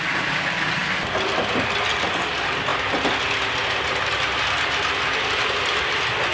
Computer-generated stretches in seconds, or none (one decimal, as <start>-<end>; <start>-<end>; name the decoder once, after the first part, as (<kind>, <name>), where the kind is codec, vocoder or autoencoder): none